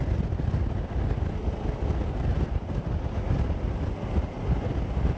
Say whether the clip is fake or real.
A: real